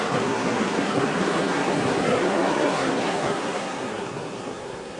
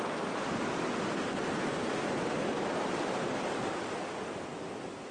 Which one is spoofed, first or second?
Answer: first